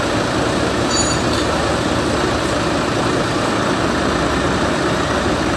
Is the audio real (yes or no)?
no